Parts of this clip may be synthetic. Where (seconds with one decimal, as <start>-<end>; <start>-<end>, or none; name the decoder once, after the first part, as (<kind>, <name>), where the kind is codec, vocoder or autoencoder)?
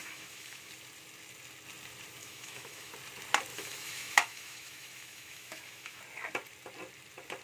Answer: 0.0-0.7 (autoencoder, DAC-VAE); 2.2-2.9; 3.5-6.0